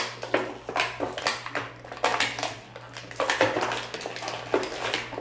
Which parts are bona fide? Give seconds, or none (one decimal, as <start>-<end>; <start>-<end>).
0.0-5.2